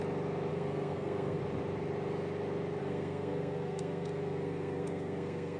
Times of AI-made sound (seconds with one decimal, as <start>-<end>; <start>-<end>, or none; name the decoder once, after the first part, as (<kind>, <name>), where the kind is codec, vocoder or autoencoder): 0.5-1.4 (codec, SNAC); 2.8-5.6